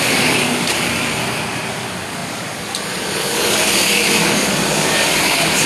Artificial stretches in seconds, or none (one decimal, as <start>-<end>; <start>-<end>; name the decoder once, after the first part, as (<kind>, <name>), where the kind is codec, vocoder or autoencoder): 0.0-1.2 (codec, DAC); 1.7-5.7